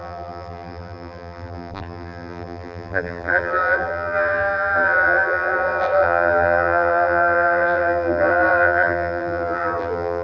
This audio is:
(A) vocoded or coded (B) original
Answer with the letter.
A